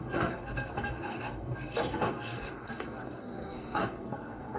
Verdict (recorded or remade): remade